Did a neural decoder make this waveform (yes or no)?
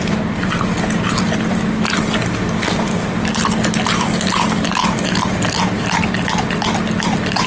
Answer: no